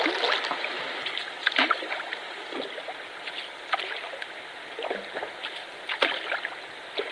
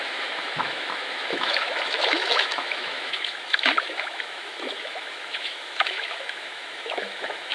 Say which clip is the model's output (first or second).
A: second